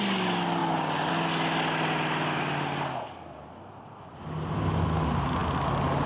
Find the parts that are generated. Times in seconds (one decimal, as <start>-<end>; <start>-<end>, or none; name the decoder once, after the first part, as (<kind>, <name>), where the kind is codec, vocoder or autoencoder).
none